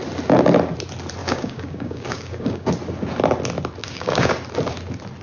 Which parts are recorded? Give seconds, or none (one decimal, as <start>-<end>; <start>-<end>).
0.0-1.2; 2.7-3.8; 4.3-5.2